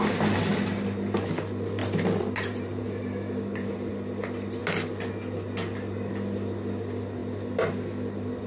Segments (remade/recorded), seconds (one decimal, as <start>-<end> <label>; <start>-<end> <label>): 0.0-1.8 recorded; 1.8-3.9 remade; 3.9-8.5 recorded